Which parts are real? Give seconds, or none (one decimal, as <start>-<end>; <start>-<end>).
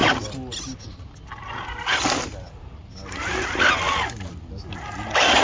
0.0-5.4